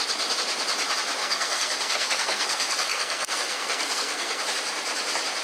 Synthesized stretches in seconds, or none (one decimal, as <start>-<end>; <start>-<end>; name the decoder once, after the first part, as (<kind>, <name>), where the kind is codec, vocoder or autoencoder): 1.2-4.4 (codec, SNAC)